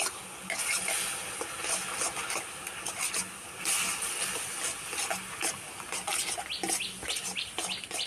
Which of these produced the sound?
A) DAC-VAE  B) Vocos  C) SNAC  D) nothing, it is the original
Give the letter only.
D